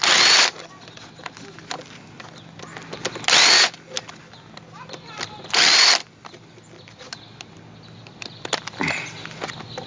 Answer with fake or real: real